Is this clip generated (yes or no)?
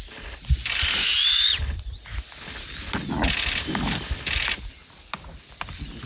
no